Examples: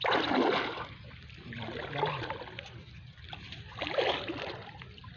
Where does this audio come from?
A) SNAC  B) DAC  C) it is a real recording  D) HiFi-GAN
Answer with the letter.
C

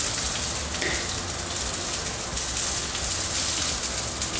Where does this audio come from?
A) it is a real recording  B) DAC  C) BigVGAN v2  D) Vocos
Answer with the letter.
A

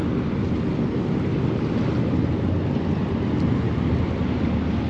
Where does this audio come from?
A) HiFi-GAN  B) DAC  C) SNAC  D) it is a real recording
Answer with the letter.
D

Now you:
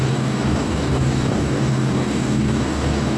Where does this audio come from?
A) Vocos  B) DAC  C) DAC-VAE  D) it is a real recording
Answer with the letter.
B